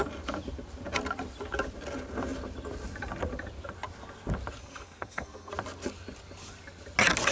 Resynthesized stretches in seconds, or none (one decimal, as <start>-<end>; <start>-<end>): 4.6-5.5